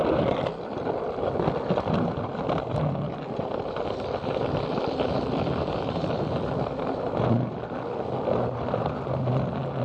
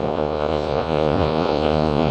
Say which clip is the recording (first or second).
first